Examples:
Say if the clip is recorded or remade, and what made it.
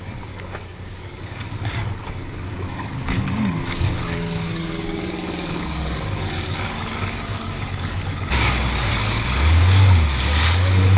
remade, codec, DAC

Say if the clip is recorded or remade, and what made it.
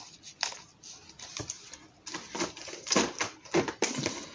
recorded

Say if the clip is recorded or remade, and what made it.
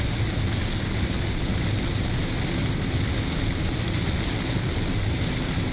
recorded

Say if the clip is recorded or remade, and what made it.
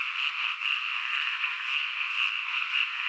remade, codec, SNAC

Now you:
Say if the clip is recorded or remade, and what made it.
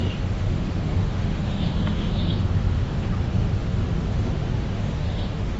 remade, autoencoder, DAC-VAE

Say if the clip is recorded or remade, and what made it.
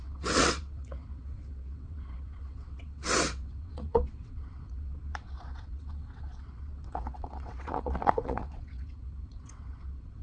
remade, vocoder, WaveNeXt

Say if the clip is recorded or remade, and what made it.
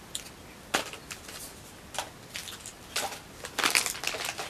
recorded